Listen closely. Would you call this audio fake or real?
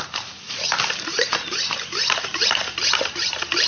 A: fake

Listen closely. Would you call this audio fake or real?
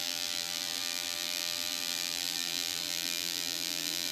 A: fake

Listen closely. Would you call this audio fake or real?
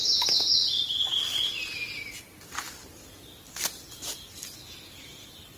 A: real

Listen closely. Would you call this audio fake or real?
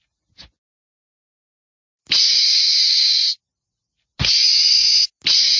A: real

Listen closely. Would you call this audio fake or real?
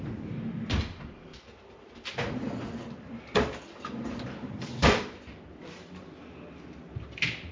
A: fake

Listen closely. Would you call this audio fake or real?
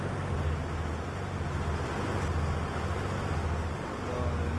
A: real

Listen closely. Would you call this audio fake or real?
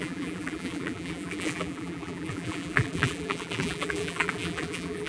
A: fake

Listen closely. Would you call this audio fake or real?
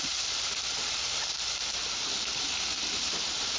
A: fake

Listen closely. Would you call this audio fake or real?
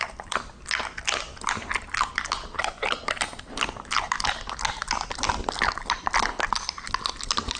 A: real